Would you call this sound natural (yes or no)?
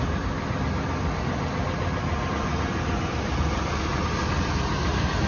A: yes